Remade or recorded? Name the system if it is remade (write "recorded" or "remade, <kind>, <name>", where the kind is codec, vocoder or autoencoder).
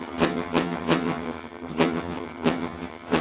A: remade, vocoder, HiFi-GAN